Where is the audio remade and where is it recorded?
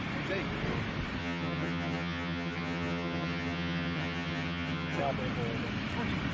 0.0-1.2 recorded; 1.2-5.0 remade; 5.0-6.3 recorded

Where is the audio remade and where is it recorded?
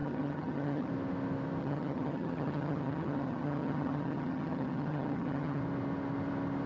0.0-0.9 remade; 0.9-1.6 recorded; 1.6-5.6 remade; 5.6-6.7 recorded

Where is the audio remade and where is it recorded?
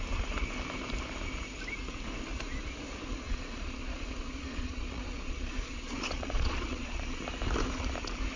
0.0-3.1 recorded; 3.1-7.2 remade; 7.2-8.4 recorded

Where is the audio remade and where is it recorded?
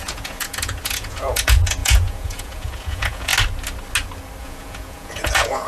0.0-3.3 remade; 3.3-4.4 recorded; 4.4-5.7 remade